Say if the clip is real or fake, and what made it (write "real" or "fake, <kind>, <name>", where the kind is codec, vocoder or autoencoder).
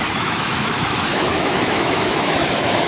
fake, autoencoder, DAC-VAE